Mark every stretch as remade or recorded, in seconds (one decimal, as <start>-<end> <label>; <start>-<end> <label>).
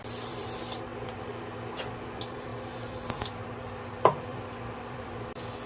0.0-5.7 remade